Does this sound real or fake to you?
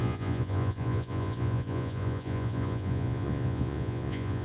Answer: fake